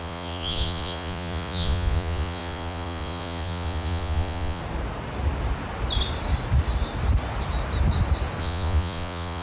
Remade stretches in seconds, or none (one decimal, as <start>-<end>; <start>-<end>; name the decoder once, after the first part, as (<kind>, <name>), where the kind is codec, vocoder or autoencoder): 0.0-4.6 (vocoder, Vocos); 8.4-9.4